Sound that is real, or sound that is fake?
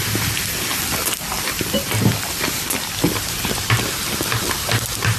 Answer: real